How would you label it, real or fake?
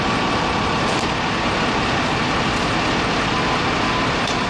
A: real